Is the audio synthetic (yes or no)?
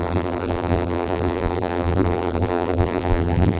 yes